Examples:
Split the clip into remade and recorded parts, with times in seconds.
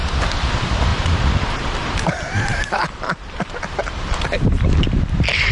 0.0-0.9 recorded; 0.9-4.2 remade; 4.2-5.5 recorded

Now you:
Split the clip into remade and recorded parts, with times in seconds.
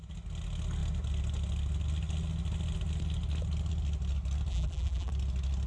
0.0-4.5 recorded; 4.5-5.1 remade; 5.1-5.7 recorded